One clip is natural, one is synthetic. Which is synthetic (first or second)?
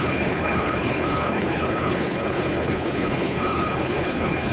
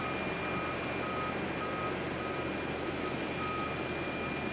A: first